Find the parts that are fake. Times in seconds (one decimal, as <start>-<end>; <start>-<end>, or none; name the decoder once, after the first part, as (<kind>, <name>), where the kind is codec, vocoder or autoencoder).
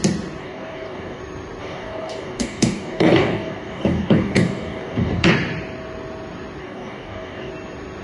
0.4-1.2 (codec, DAC); 1.6-5.3; 6.6-7.5